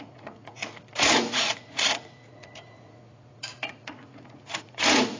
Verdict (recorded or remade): remade